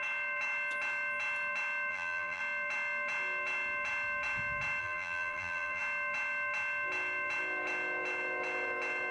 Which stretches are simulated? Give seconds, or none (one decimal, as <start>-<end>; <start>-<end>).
1.9-2.4; 4.8-5.8